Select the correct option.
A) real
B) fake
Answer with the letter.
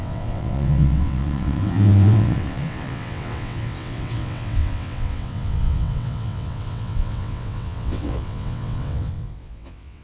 B